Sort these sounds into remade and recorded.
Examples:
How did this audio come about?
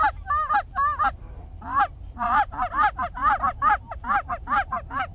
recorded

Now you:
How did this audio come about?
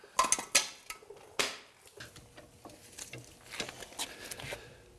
recorded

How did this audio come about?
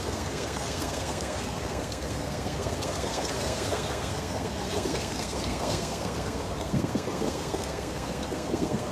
remade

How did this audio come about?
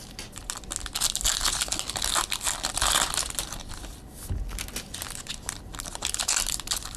recorded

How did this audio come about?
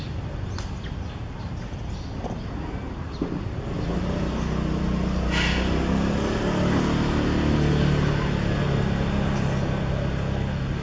recorded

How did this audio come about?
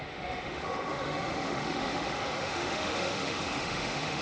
remade